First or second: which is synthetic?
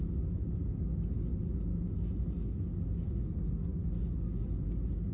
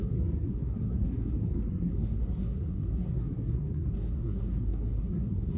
second